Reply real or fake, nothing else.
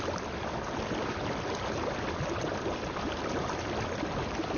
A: real